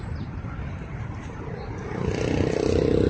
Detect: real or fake real